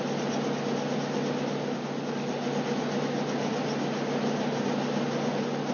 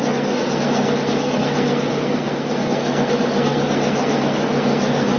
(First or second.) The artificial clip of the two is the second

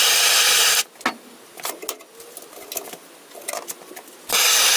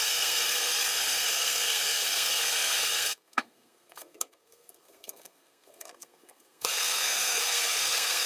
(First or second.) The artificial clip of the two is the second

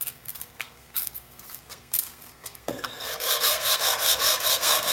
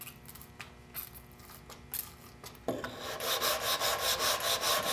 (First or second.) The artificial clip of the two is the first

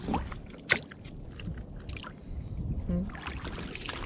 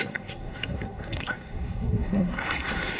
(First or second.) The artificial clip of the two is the second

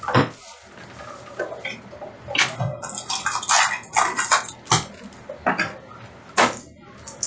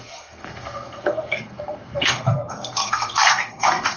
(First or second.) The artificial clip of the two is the second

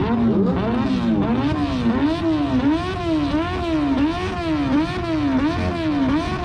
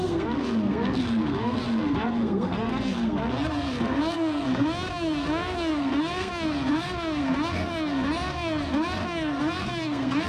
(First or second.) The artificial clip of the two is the second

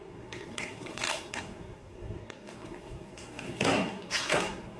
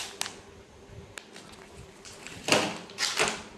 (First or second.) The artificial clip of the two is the first